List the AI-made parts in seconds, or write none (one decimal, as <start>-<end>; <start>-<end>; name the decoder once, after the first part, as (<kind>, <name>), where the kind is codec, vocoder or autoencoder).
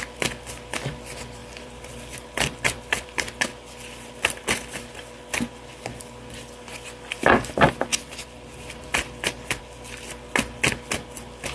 1.4-3.4 (vocoder, BigVGAN v2); 7.9-9.6